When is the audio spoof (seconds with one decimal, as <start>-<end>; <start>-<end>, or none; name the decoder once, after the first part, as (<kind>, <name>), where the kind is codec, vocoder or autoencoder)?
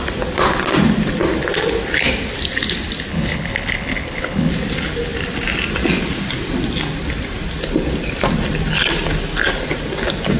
3.1-4.5 (codec, HILCodec)